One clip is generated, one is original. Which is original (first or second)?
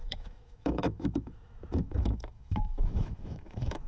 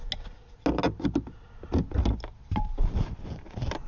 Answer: second